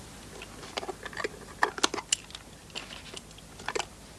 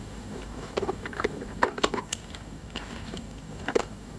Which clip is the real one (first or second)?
first